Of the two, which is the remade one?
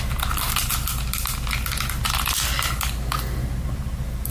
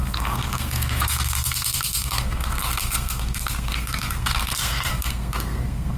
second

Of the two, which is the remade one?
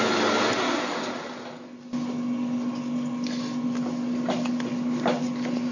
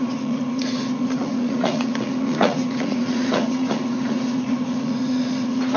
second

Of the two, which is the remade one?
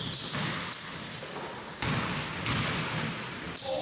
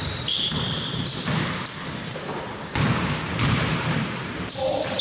second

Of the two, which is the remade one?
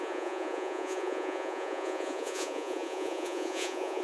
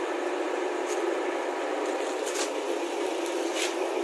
first